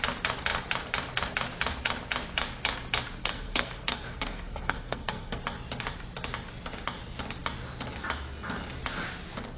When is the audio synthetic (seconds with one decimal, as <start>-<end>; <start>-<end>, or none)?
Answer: 3.2-5.4